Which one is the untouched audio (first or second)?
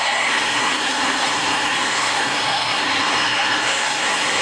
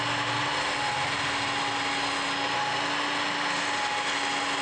second